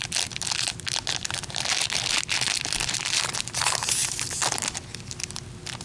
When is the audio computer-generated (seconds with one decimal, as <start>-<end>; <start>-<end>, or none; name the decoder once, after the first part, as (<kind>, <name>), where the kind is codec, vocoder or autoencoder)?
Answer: none